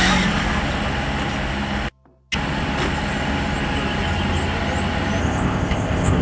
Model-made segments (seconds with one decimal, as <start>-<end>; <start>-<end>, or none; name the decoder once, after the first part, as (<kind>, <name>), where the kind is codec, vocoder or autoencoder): 5.2-6.2 (codec, ZipCodec)